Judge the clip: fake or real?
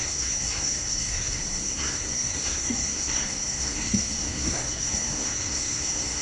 fake